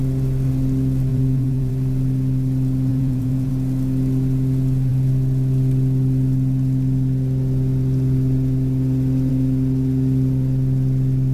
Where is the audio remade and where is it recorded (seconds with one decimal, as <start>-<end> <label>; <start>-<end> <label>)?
0.0-1.1 recorded; 1.1-1.7 remade; 1.7-2.9 recorded; 2.9-3.5 remade; 3.5-11.3 recorded